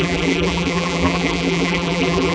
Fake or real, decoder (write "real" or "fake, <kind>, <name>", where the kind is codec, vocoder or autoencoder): fake, vocoder, BigVGAN v2